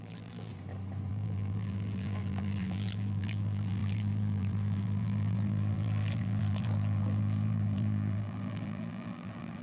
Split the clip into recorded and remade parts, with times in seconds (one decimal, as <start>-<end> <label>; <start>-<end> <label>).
0.0-0.5 remade; 0.5-1.1 recorded; 1.1-9.6 remade